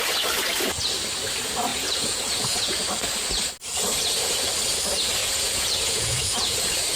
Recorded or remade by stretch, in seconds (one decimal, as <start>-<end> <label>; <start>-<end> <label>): 0.0-1.7 recorded; 1.7-2.9 remade; 2.9-5.2 recorded; 5.2-6.5 remade; 6.5-7.0 recorded